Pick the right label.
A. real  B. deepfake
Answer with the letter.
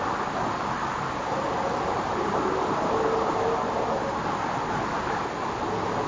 A